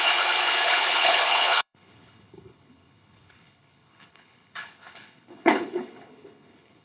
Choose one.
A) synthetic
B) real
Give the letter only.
A